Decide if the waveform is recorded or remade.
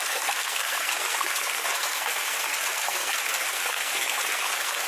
remade